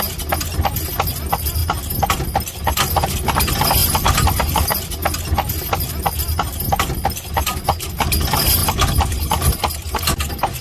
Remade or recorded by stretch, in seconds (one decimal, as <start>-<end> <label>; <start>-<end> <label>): 0.0-10.6 recorded